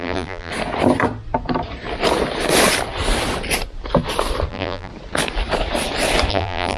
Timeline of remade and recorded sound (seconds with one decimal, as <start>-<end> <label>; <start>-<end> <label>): 0.0-0.5 remade; 0.5-4.5 recorded; 4.5-4.9 remade; 4.9-6.3 recorded; 6.3-6.8 remade